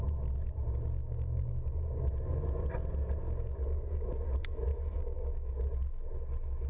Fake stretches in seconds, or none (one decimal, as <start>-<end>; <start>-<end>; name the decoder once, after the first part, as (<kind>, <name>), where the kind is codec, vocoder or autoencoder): 1.0-2.1 (codec, DAC); 3.2-4.1; 4.7-5.5